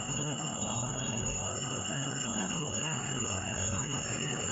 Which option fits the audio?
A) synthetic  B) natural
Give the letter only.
A